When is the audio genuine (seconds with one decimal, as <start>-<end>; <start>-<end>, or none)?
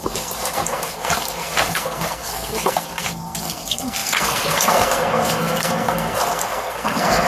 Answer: none